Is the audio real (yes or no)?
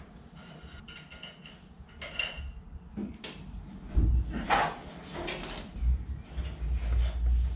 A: yes